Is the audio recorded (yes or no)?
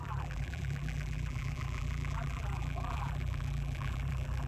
no